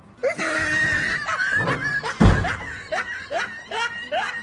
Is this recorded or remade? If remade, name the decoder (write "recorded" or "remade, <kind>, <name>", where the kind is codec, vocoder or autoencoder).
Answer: recorded